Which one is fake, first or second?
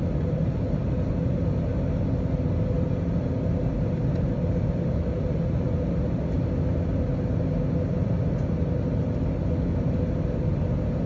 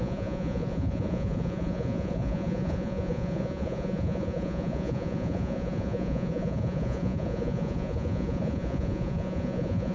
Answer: second